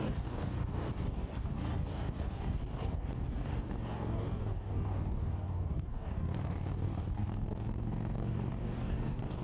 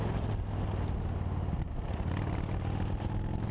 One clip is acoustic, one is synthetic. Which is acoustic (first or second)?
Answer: second